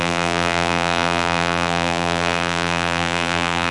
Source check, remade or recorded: remade